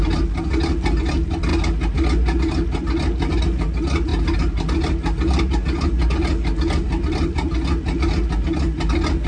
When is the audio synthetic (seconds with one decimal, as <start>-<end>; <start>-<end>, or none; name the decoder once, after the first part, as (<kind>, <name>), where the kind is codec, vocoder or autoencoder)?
none